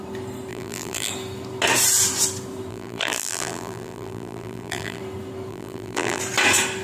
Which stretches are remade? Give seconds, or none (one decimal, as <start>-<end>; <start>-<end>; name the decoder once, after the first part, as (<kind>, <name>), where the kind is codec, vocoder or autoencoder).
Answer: 0.5-1.1 (vocoder, BigVGAN v2); 2.7-5.0; 5.5-6.2